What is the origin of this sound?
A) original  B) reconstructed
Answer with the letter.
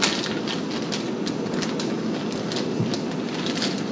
A